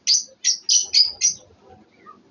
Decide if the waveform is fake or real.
real